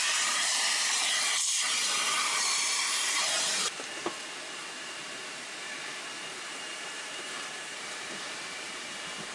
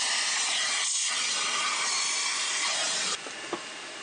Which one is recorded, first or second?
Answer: second